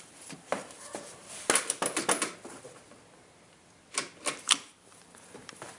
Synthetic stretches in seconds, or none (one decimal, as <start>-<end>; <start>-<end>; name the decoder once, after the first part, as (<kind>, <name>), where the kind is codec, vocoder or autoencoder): 0.0-1.2 (vocoder, BigVGAN v2); 4.7-5.8